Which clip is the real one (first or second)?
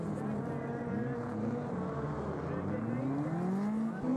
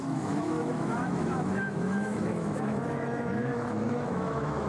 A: first